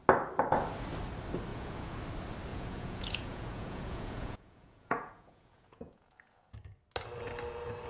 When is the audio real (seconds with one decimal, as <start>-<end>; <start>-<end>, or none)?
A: 0.0-1.5; 2.0-2.5; 6.5-7.9